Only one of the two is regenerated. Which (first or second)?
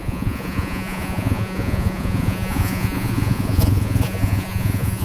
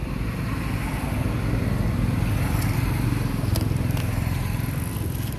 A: first